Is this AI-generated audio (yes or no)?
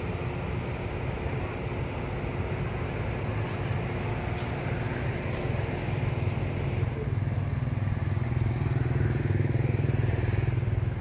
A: no